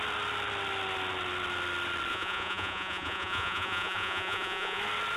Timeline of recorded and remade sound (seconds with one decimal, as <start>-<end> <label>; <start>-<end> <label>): 0.0-2.1 recorded; 2.1-4.8 remade; 4.8-5.2 recorded

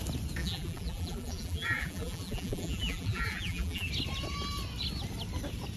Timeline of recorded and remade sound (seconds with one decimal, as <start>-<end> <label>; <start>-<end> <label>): 0.0-0.4 recorded; 0.4-3.9 remade; 3.9-5.8 recorded